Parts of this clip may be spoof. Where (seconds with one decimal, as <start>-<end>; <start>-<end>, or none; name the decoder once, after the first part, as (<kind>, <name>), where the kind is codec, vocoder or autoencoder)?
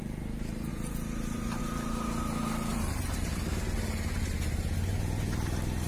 0.7-1.6 (vocoder, BigVGAN v2); 2.7-4.8